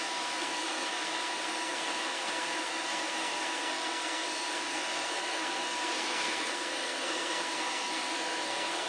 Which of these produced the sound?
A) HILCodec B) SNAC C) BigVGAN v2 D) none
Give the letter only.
B